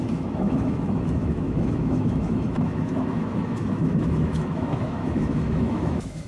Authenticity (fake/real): fake